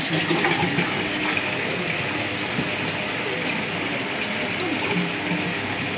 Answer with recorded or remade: recorded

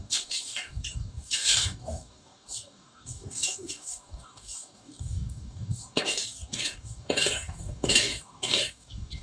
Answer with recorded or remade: remade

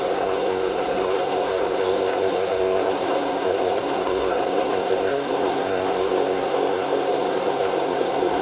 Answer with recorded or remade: remade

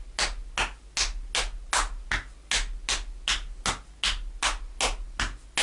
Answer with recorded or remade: recorded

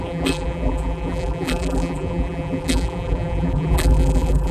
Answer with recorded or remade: remade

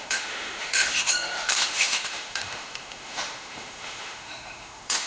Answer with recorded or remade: remade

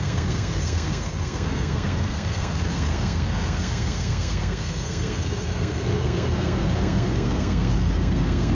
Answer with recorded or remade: remade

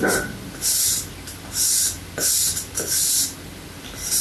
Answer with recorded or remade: recorded